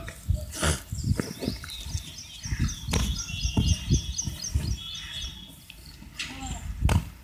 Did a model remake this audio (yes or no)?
no